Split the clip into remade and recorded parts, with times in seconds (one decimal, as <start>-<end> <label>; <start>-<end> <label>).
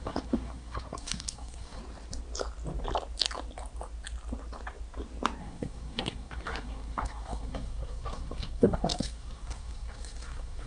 0.0-1.8 remade; 1.8-5.4 recorded; 5.4-10.7 remade